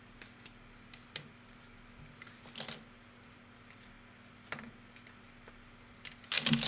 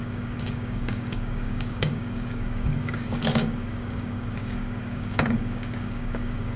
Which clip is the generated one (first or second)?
second